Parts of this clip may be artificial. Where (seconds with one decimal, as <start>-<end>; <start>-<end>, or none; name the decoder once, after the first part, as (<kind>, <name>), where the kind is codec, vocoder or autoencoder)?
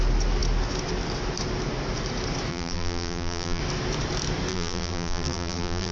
2.5-3.6 (vocoder, BigVGAN v2); 4.5-5.9